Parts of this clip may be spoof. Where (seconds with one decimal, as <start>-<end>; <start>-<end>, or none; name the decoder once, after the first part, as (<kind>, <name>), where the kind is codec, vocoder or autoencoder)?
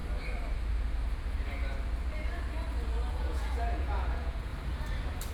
3.1-4.5 (vocoder, Vocos)